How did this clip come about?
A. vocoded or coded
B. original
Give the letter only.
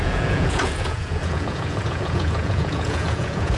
A